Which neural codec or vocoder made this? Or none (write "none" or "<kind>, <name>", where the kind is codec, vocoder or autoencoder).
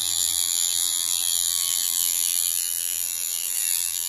vocoder, BigVGAN v2